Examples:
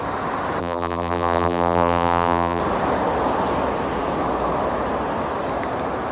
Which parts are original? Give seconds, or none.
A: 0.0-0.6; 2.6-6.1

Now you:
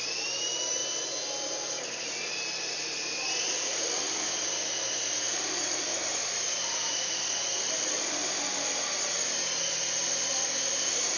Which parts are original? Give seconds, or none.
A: 0.8-5.3; 8.2-9.6